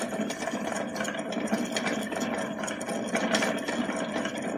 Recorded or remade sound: recorded